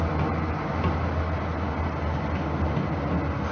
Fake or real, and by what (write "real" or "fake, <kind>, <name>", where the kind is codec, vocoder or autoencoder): real